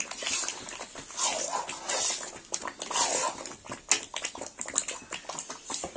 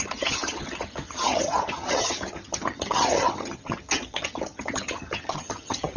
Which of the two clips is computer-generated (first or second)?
second